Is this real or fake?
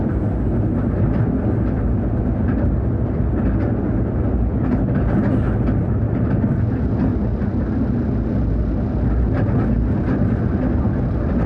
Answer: real